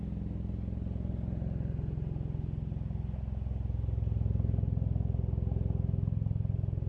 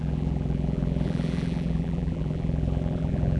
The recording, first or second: first